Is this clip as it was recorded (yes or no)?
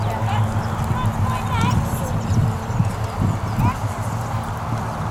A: yes